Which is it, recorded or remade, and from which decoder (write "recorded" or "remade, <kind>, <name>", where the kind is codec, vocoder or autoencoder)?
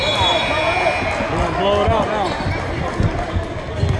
recorded